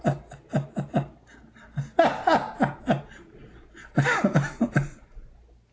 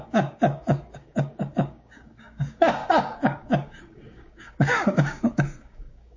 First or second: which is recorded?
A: first